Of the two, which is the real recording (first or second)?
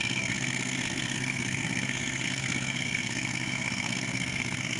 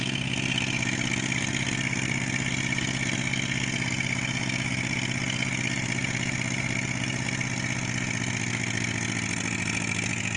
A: second